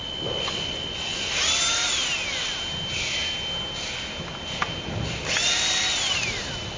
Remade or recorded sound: recorded